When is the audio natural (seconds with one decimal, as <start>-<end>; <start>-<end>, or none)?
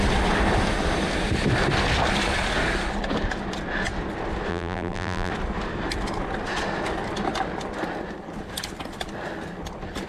0.0-4.5; 5.3-10.1